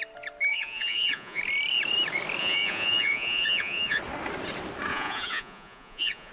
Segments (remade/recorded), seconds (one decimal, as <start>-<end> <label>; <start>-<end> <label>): 0.0-0.5 recorded; 0.5-1.4 remade; 1.4-2.4 recorded; 2.4-4.0 remade; 4.0-4.9 recorded; 4.9-6.3 remade